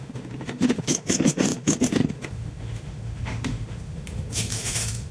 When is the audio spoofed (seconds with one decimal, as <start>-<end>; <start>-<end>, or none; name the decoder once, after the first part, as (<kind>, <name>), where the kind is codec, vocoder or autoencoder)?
0.0-5.1 (autoencoder, DAC-VAE)